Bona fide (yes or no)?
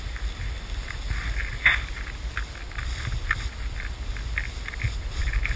yes